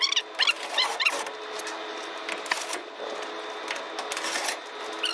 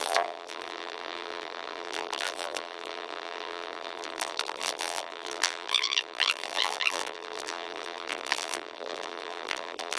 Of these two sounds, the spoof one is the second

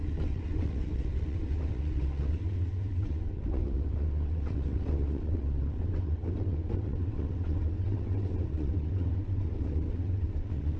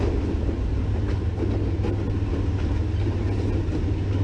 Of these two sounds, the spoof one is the first